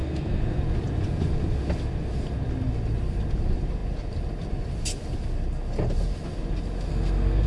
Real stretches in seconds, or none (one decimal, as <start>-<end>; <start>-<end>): 0.6-6.9